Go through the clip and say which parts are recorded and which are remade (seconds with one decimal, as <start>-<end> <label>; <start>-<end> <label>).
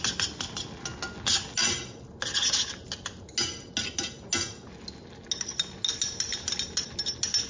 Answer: 0.0-7.5 recorded